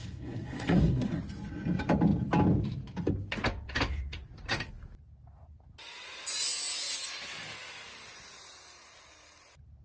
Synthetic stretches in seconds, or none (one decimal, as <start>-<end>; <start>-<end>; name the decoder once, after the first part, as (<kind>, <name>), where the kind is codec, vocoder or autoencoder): 0.0-1.2 (codec, SNAC)